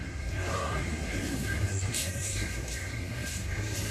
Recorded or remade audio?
remade